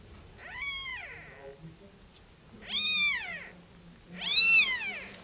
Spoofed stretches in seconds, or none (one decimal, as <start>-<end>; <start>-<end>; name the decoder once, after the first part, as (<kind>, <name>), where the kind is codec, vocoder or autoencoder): none